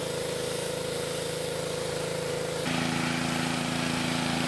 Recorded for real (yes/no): no